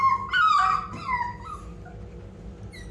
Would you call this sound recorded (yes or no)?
yes